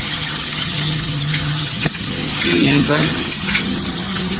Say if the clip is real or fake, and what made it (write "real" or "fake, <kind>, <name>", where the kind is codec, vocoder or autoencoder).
fake, vocoder, HiFi-GAN